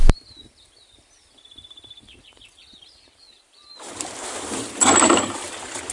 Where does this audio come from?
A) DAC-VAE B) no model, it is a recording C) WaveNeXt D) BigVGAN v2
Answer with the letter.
B